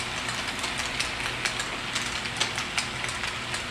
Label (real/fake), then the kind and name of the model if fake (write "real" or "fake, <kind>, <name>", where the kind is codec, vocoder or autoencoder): real